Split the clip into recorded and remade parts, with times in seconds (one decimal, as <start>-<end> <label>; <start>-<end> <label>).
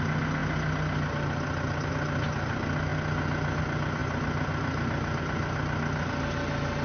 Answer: 0.0-6.8 recorded